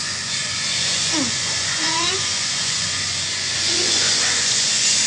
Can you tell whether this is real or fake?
fake